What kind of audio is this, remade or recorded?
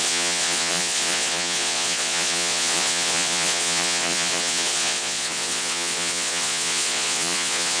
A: remade